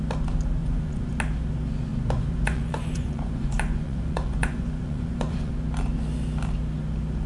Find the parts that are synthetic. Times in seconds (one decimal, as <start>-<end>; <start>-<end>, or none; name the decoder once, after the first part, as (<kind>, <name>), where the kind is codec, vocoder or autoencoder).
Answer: 0.6-1.1 (vocoder, Vocos); 1.9-5.5